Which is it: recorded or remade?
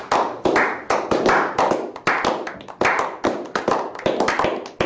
recorded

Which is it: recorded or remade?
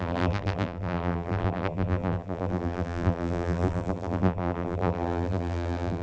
remade